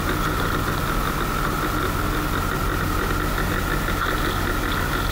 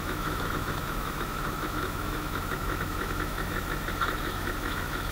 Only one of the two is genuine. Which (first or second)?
first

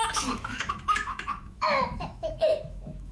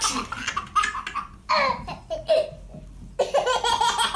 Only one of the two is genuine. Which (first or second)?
second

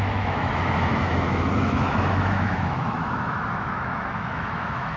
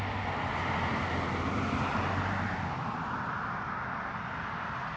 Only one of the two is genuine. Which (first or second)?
second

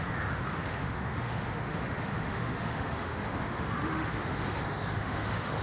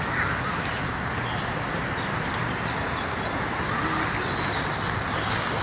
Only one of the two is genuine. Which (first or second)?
second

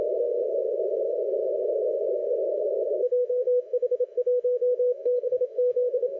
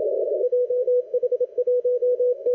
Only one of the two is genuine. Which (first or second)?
second